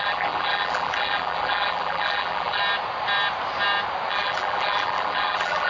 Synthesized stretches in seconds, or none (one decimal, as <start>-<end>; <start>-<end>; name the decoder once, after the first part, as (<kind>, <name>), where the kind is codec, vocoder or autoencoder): 0.0-2.6 (vocoder, BigVGAN v2); 4.1-5.7